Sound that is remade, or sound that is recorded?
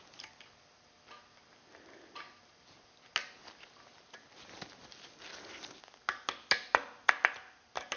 recorded